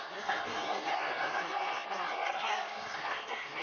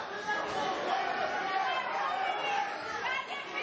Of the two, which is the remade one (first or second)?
first